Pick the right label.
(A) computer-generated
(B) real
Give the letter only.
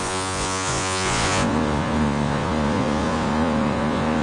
A